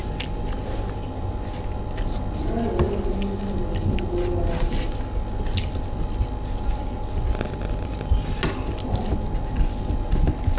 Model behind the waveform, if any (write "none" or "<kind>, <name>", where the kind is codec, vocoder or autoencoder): none